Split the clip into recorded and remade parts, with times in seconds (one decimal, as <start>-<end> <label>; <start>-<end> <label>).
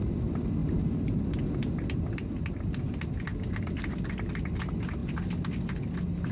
0.0-0.6 recorded; 0.6-1.2 remade; 1.2-6.3 recorded